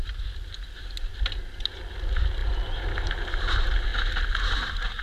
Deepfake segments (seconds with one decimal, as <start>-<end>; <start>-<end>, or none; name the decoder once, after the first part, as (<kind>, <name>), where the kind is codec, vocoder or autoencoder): none

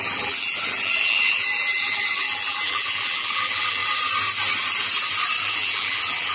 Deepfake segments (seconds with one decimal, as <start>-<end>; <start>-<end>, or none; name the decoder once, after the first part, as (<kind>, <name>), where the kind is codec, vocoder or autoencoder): 0.0-3.8 (vocoder, BigVGAN v2); 5.4-6.3

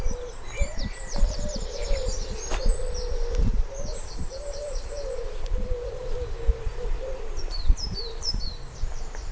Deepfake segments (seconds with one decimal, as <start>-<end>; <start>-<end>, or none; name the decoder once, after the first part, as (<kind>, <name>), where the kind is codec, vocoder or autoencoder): 0.0-1.8 (vocoder, BigVGAN v2); 3.5-9.3

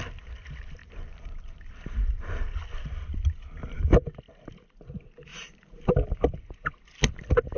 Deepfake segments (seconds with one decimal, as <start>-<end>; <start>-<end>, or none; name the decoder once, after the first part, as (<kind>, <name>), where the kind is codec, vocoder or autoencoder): 0.8-2.6 (vocoder, BigVGAN v2); 5.3-5.9

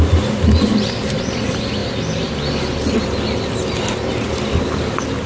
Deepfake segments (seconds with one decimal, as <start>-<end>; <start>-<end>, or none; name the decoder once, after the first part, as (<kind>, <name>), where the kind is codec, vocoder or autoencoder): none